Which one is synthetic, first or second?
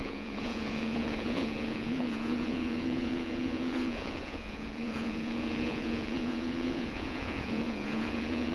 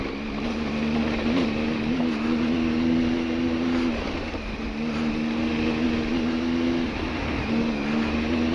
first